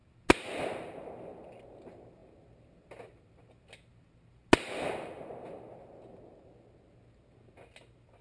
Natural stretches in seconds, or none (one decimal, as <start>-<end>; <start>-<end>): 0.0-8.2